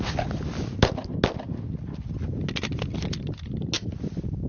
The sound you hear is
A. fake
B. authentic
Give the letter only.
B